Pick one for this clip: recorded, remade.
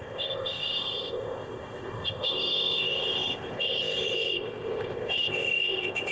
remade